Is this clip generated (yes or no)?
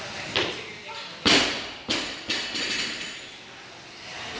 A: no